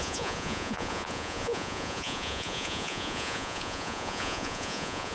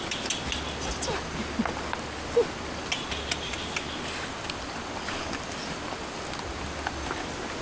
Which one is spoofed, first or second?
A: first